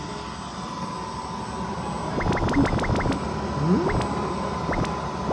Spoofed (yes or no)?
no